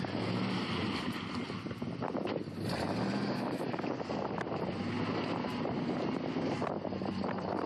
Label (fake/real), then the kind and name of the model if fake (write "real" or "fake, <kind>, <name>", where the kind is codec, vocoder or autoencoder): real